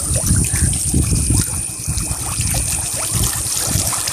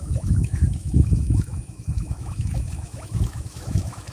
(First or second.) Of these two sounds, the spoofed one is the second